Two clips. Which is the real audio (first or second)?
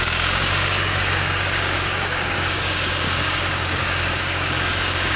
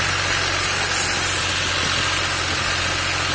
second